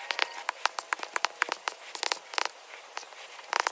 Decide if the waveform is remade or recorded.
recorded